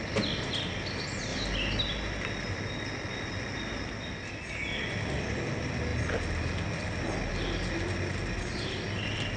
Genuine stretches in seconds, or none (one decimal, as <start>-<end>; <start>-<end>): 0.0-9.4